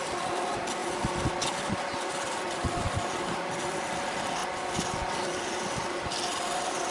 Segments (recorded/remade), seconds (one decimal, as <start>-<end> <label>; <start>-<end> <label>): 0.0-6.9 recorded